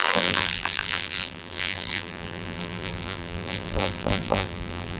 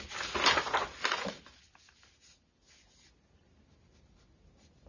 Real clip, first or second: second